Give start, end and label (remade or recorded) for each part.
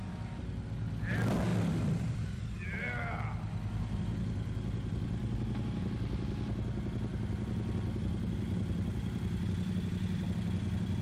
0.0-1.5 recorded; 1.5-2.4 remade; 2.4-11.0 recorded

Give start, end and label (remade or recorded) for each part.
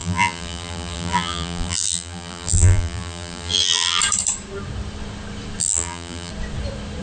0.0-4.0 remade; 4.0-5.6 recorded; 5.6-6.3 remade; 6.3-7.0 recorded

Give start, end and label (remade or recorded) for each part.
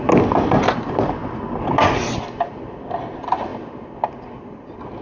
0.0-5.0 recorded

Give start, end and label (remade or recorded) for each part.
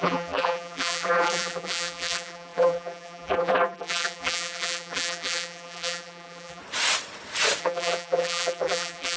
0.0-6.6 remade; 6.6-7.6 recorded; 7.6-9.2 remade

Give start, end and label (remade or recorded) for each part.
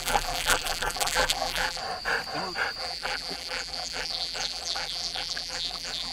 0.0-1.8 remade; 1.8-2.8 recorded; 2.8-6.1 remade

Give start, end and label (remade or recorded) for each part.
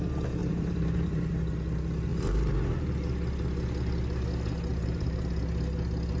0.0-0.4 recorded; 0.4-1.3 remade; 1.3-2.1 recorded; 2.1-2.7 remade; 2.7-4.7 recorded; 4.7-5.3 remade; 5.3-6.2 recorded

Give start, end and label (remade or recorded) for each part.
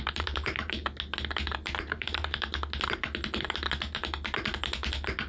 0.0-0.8 remade; 0.8-1.8 recorded; 1.8-2.5 remade; 2.5-5.3 recorded